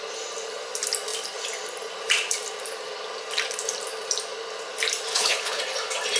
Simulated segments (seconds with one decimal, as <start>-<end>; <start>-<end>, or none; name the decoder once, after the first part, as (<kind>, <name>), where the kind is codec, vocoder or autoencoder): 5.1-5.6 (codec, HILCodec)